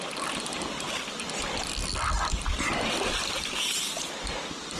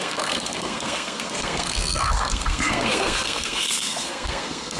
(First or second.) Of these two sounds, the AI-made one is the second